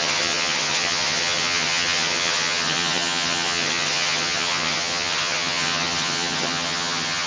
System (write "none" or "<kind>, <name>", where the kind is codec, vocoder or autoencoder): vocoder, HiFi-GAN